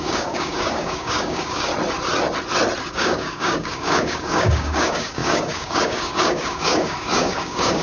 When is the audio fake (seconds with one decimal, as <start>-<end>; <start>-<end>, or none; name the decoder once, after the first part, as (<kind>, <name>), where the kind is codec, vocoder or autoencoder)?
0.0-1.7 (codec, DAC); 2.8-7.8